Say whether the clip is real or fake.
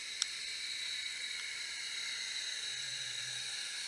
real